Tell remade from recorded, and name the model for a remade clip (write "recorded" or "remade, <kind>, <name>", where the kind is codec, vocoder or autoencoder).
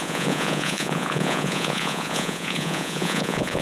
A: remade, vocoder, Vocos